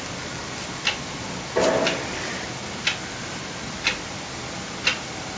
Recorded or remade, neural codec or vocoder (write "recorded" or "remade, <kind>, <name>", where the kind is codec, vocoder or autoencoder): recorded